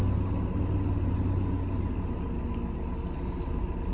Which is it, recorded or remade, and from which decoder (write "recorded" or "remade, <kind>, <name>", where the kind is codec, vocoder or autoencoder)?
recorded